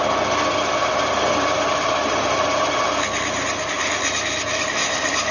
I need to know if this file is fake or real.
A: real